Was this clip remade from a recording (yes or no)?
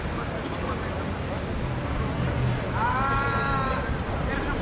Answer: no